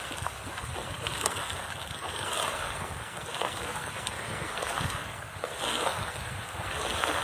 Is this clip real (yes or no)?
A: no